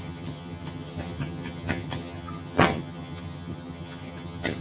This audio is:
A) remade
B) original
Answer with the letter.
A